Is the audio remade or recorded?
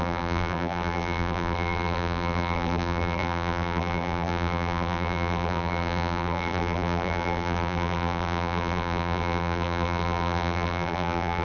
remade